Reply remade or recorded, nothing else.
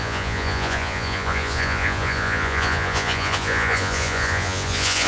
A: remade